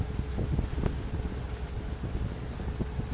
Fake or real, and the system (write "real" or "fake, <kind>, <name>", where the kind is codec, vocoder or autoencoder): real